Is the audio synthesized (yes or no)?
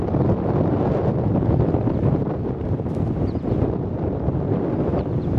no